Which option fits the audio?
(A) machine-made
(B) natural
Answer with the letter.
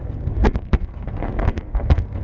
A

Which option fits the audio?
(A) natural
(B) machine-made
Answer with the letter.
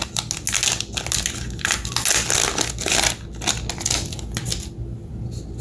A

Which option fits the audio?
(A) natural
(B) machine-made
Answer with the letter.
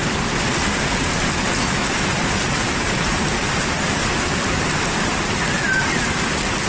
B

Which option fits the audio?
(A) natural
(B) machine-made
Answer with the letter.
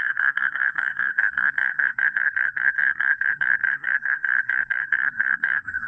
B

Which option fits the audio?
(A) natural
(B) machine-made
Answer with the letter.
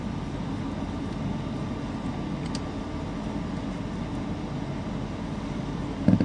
A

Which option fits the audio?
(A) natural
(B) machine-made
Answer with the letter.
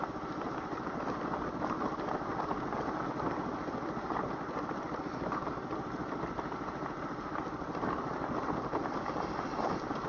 A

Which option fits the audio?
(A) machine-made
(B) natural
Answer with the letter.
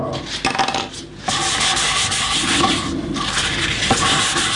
B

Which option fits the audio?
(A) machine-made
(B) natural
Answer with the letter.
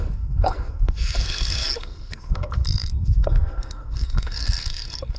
A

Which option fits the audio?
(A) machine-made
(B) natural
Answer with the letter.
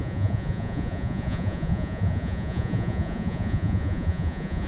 A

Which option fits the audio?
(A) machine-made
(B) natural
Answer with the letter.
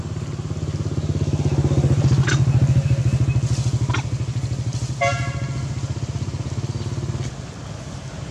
B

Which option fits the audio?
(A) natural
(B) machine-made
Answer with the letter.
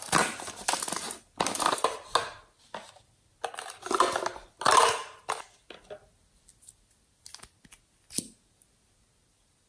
A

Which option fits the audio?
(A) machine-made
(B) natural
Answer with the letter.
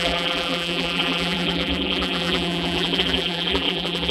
A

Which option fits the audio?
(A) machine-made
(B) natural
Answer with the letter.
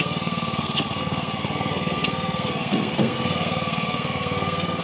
A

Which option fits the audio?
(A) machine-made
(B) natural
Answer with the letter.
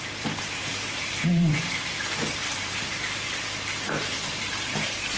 A